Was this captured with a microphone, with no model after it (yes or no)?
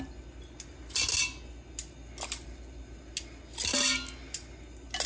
yes